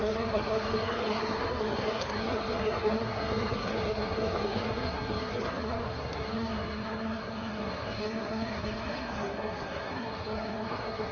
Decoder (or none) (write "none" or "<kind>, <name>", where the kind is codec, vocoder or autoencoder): codec, SNAC